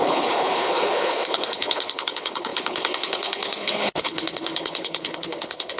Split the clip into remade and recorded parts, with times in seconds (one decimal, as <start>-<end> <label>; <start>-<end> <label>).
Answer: 0.0-5.8 remade